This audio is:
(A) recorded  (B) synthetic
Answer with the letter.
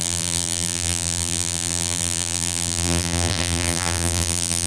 B